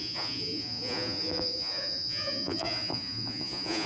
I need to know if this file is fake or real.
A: fake